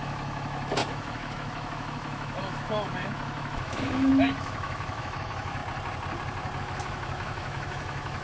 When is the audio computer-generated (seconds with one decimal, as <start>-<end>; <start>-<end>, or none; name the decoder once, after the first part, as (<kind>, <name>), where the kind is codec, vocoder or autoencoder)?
0.0-5.6 (autoencoder, DAC-VAE); 6.6-8.2